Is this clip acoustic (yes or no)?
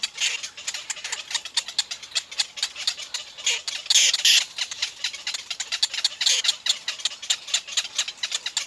yes